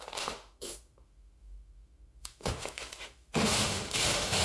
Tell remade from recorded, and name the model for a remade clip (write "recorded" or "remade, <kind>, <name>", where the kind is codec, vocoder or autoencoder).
remade, autoencoder, DAC-VAE